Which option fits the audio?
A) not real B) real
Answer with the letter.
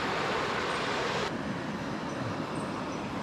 B